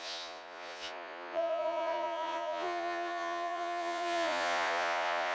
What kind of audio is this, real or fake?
fake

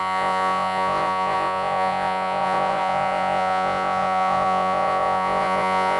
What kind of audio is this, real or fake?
fake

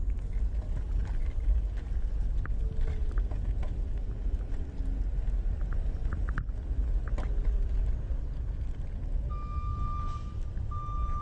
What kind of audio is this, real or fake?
real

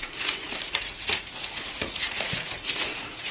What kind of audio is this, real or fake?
fake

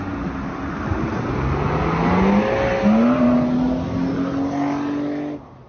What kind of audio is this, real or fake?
real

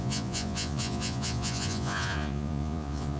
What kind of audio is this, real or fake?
fake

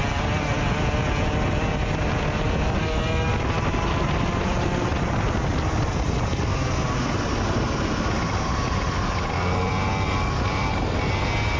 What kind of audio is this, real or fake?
real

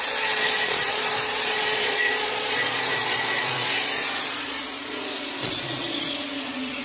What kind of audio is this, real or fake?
fake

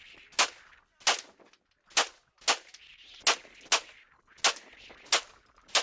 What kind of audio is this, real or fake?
real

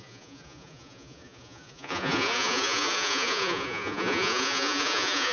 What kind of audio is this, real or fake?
fake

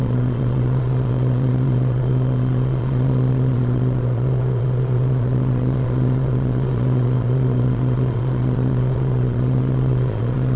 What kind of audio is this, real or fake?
fake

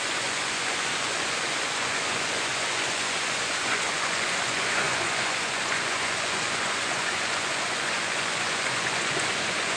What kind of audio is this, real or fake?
fake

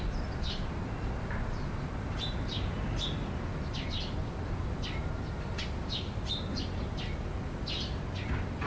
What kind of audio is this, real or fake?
real